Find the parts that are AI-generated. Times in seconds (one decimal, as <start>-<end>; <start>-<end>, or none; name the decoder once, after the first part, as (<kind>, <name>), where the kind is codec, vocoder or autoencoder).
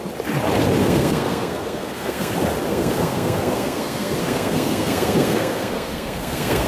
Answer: 0.8-2.3 (codec, SNAC); 2.7-6.7